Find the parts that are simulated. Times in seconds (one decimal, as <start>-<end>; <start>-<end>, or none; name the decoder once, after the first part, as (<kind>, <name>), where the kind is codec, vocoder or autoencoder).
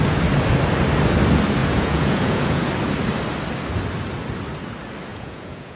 1.6-2.7 (vocoder, Vocos); 5.1-5.8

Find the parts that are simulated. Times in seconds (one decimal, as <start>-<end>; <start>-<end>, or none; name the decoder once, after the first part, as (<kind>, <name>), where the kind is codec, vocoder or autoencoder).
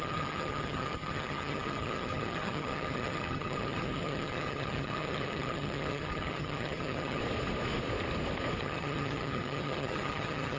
0.0-7.2 (vocoder, HiFi-GAN); 8.6-10.6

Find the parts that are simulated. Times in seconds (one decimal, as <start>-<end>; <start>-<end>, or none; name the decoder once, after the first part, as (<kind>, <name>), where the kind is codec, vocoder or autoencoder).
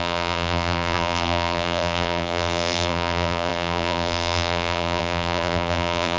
0.0-6.2 (vocoder, BigVGAN v2)